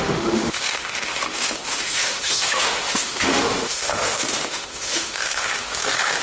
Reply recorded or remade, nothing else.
remade